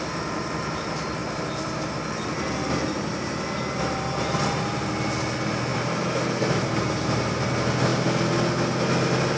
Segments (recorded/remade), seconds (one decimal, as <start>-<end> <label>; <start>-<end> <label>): 0.0-5.7 recorded; 5.7-7.5 remade; 7.5-9.4 recorded